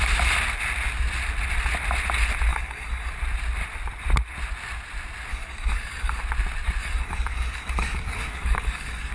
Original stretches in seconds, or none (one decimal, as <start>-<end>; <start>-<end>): 0.0-2.5; 3.1-5.3; 6.2-6.8